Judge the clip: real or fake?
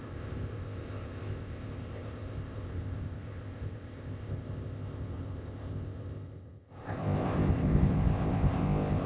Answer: fake